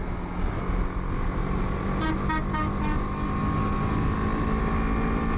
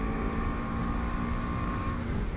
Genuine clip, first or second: first